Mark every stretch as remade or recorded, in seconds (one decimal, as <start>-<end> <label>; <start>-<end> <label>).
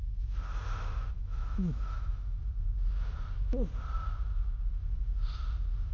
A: 0.0-1.1 recorded; 1.1-2.4 remade; 2.4-5.9 recorded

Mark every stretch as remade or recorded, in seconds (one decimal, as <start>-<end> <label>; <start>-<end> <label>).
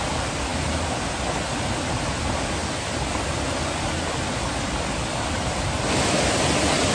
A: 0.0-6.9 recorded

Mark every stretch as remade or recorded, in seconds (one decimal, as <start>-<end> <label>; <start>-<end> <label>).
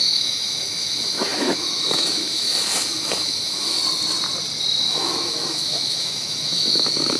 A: 0.0-3.8 remade; 3.8-4.9 recorded; 4.9-7.2 remade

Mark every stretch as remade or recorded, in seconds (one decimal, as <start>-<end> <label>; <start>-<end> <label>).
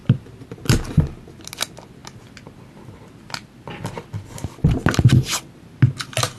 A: 0.0-6.4 recorded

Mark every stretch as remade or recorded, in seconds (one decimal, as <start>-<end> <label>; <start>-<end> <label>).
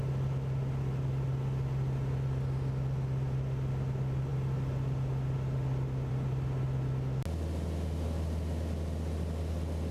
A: 0.0-9.9 recorded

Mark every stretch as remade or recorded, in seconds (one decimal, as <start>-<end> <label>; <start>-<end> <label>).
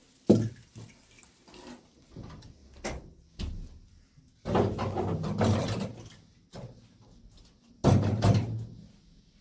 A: 0.0-9.4 recorded